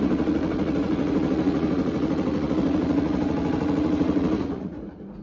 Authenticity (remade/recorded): remade